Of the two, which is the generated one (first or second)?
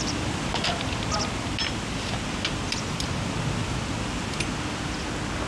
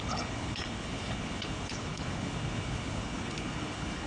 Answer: second